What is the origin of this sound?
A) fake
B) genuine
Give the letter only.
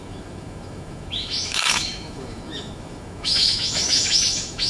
A